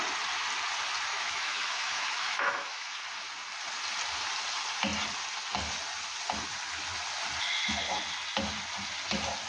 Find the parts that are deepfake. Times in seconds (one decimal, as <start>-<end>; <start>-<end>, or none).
1.1-3.0

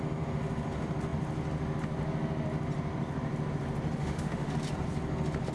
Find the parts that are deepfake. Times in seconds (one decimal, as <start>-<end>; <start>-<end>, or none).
4.0-4.5

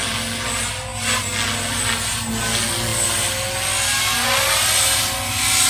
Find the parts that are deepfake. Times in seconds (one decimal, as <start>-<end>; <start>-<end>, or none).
none

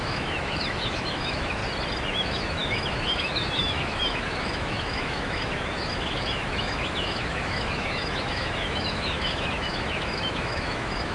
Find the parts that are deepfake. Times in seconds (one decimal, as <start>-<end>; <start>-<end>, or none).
0.0-1.6; 2.1-11.1

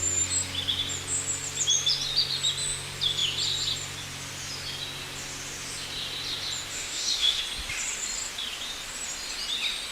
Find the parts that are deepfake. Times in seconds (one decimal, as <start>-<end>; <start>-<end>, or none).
6.7-7.4

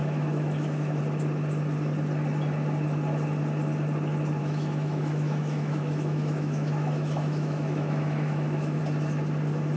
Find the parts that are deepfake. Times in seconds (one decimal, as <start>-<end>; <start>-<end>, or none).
0.0-1.0; 4.4-8.8